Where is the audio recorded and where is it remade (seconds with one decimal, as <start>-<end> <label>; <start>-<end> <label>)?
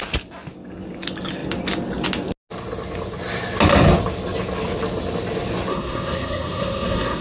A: 0.0-5.7 recorded; 5.7-7.2 remade